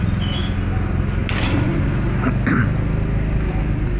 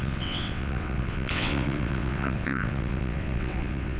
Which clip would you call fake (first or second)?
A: second